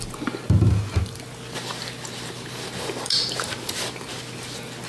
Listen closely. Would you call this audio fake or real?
real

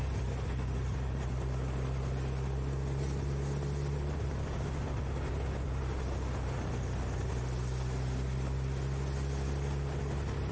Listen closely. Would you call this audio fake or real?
real